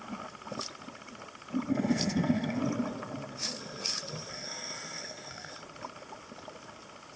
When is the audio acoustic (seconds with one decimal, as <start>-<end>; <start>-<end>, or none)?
0.0-1.7; 2.6-4.3; 5.5-7.2